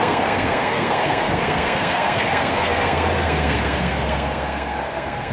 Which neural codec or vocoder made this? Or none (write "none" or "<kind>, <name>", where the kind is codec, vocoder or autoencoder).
codec, SNAC